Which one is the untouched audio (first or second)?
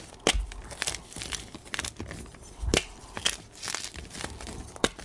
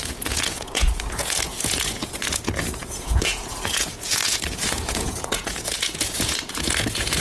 first